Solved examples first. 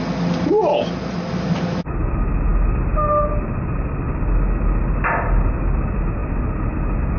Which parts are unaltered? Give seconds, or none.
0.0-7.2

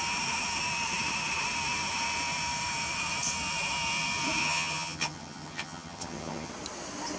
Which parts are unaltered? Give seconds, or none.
0.0-4.4; 6.5-7.2

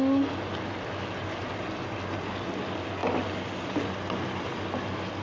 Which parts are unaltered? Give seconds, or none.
0.0-5.2

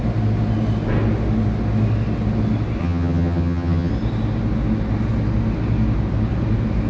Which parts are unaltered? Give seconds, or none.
0.0-2.8; 3.9-6.9

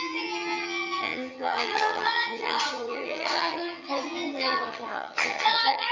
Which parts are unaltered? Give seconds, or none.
none

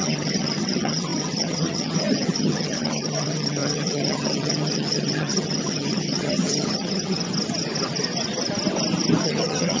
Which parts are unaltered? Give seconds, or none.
7.2-9.2

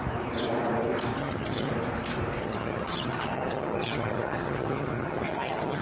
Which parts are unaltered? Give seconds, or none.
0.0-1.2; 1.7-2.4

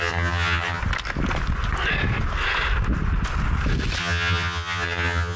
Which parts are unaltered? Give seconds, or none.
0.8-4.0